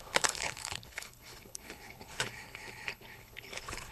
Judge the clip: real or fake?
fake